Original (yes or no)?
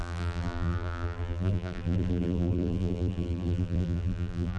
no